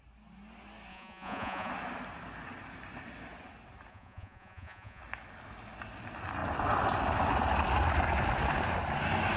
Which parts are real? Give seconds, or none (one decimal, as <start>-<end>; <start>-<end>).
0.0-0.9; 1.7-3.9; 5.0-9.4